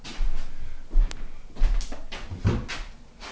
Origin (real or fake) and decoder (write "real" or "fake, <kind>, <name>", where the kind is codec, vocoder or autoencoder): real